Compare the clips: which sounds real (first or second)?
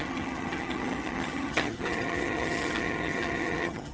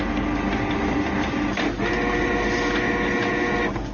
second